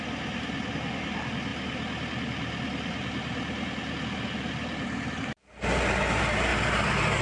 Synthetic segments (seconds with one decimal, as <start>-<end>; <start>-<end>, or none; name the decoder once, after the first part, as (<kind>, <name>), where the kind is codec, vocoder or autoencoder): 1.5-5.8 (vocoder, BigVGAN v2); 6.5-7.2